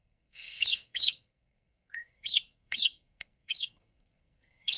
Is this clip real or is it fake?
fake